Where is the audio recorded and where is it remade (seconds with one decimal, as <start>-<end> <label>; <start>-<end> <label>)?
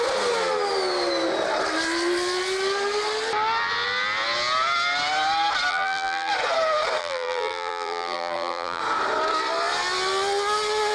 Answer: 0.0-5.7 recorded; 5.7-6.3 remade; 6.3-7.0 recorded; 7.0-8.8 remade; 8.8-10.9 recorded